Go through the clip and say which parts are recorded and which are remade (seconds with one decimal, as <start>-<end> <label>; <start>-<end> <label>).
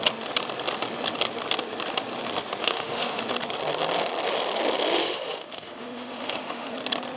0.0-2.6 recorded; 2.6-3.2 remade; 3.2-5.0 recorded; 5.0-6.7 remade; 6.7-7.2 recorded